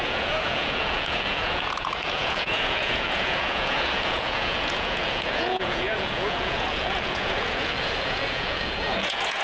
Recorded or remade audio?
remade